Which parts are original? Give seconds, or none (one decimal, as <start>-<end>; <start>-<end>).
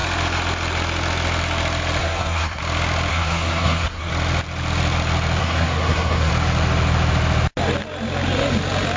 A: 0.0-2.0; 2.6-3.1; 4.1-5.4; 6.3-9.0